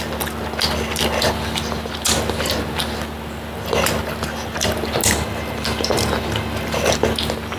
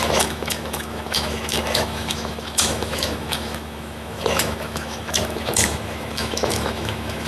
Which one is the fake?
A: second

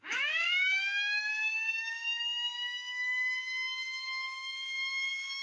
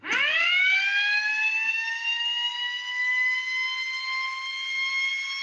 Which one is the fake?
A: first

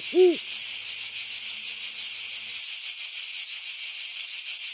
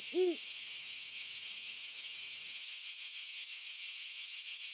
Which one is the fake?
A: second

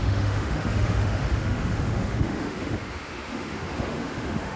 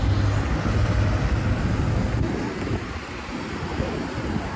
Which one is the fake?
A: first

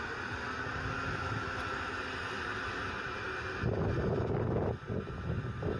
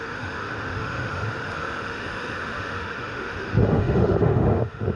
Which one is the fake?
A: second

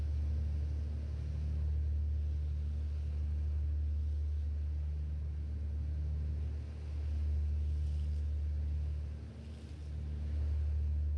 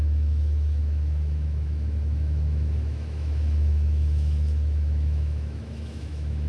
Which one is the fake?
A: second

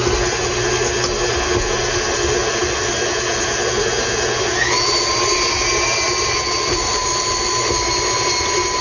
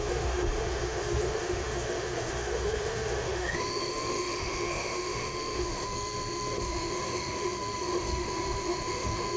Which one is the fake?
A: second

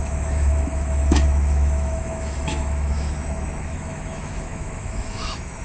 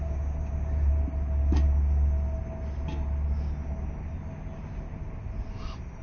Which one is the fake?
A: first